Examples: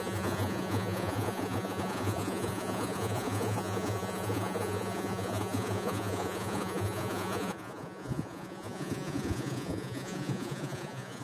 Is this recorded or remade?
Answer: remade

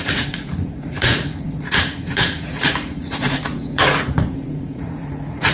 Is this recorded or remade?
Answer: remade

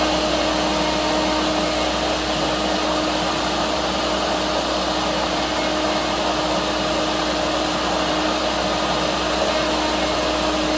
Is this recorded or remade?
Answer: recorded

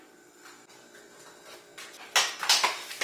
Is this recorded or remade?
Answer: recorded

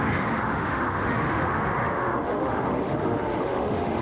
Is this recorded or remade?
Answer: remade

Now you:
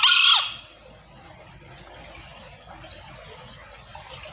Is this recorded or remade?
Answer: recorded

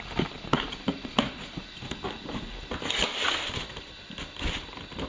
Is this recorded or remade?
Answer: recorded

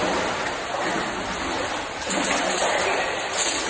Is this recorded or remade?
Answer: recorded